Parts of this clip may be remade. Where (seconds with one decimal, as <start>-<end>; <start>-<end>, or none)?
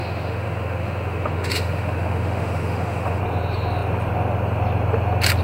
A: 0.0-3.2